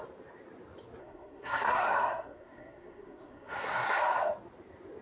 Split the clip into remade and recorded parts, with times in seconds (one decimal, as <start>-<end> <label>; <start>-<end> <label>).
0.0-1.0 recorded; 1.0-4.0 remade; 4.0-5.0 recorded